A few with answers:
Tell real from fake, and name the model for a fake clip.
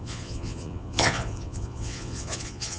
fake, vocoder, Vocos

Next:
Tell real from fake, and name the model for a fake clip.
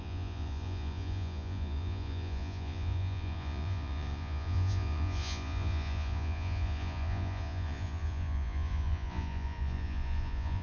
fake, vocoder, Vocos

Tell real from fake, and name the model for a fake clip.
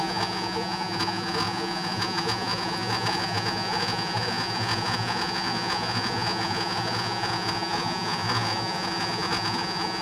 fake, vocoder, Vocos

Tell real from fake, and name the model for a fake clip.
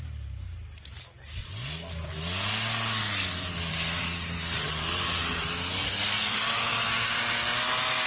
real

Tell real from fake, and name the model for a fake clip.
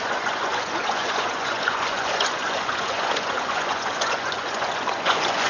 fake, vocoder, Vocos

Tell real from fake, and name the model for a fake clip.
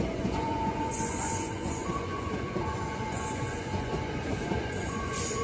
fake, vocoder, Vocos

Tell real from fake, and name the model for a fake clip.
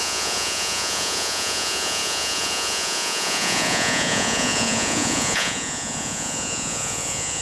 fake, vocoder, Vocos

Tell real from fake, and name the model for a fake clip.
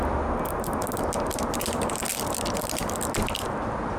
real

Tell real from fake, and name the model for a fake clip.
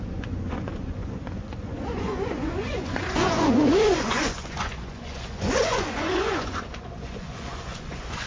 fake, vocoder, Vocos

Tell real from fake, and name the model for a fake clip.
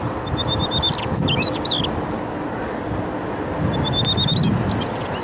real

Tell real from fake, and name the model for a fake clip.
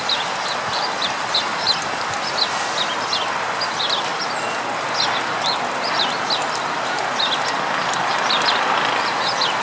real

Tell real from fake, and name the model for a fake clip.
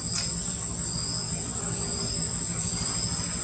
real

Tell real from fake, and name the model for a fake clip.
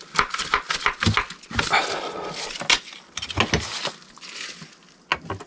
real